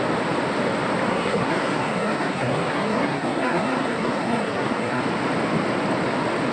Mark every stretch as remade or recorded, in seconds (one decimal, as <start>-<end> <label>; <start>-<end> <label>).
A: 0.0-1.1 recorded; 1.1-5.0 remade; 5.0-6.5 recorded